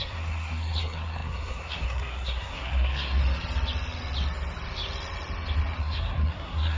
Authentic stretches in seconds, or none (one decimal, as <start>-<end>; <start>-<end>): 3.2-5.8